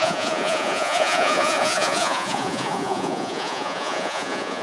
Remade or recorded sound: remade